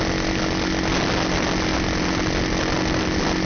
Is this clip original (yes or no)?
yes